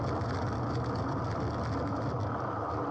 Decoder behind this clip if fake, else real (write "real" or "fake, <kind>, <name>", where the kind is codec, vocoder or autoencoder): real